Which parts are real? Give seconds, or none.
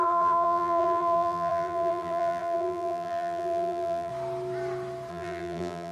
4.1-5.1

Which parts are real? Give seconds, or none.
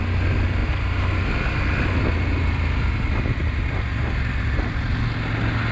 0.0-5.7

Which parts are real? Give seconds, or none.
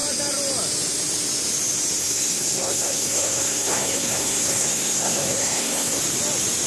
0.0-2.0; 6.0-6.7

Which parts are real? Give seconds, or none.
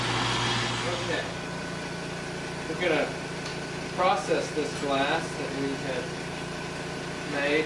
0.0-7.7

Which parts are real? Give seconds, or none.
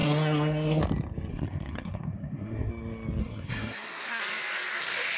0.8-1.3; 2.7-3.2; 4.2-5.2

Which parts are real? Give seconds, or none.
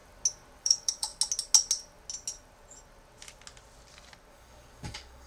0.0-0.6; 1.1-4.3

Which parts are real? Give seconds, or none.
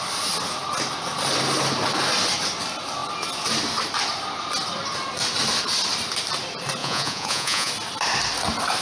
0.0-6.8; 7.7-8.8